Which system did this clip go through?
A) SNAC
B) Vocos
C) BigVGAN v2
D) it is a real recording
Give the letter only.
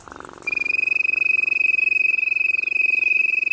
C